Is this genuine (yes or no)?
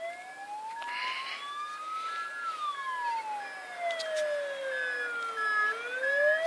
yes